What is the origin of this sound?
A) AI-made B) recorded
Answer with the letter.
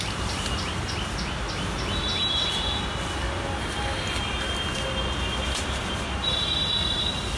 B